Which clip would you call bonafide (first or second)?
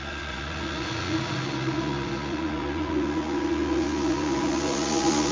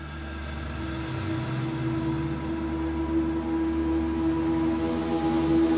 second